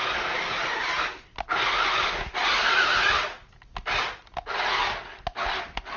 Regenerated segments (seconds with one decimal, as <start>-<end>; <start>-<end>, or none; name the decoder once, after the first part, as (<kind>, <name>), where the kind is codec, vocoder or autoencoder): none